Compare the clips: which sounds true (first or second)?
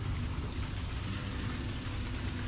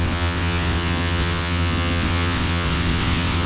first